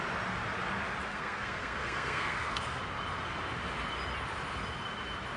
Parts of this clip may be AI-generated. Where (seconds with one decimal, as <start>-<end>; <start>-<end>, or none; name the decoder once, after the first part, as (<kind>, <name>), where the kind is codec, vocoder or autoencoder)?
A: 1.1-2.8 (codec, SNAC)